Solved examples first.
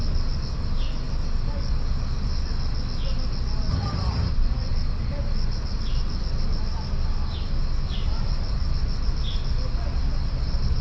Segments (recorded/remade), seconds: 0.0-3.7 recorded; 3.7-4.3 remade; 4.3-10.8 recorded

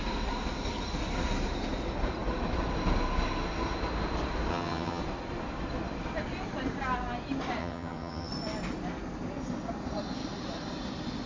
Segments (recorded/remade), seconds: 0.0-4.5 recorded; 4.5-5.0 remade; 5.0-7.6 recorded; 7.6-8.3 remade; 8.3-11.3 recorded

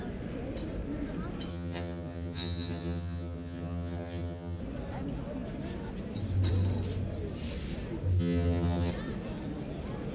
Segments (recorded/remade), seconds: 0.0-1.5 recorded; 1.5-4.6 remade; 4.6-8.2 recorded; 8.2-8.9 remade; 8.9-10.1 recorded

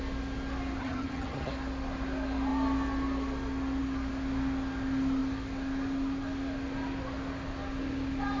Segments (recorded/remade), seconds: 0.0-0.8 recorded; 0.8-1.5 remade; 1.5-8.4 recorded

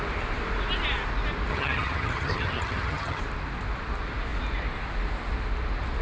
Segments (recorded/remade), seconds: 0.0-1.5 recorded; 1.5-3.2 remade; 3.2-6.0 recorded

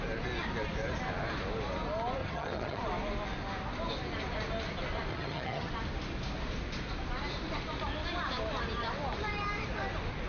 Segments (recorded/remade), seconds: 0.0-2.2 recorded; 2.2-2.8 remade; 2.8-5.1 recorded; 5.1-5.7 remade; 5.7-10.3 recorded

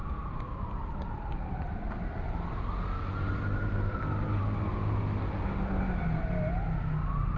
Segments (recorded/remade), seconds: 0.0-7.4 recorded